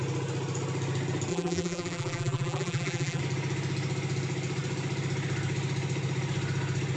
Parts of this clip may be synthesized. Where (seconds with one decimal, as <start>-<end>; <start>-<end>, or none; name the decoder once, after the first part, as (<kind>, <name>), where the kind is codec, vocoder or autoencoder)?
1.3-3.2 (vocoder, BigVGAN v2)